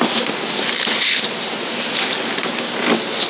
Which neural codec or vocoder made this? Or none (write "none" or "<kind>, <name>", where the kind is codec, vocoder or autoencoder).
none